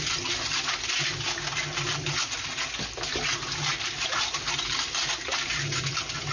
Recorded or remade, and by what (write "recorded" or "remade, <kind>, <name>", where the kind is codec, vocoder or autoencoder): recorded